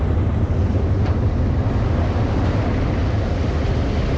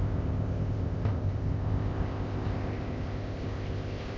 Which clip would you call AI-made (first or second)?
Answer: second